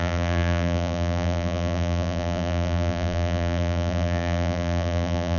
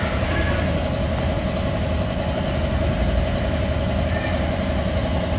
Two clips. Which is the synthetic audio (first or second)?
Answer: first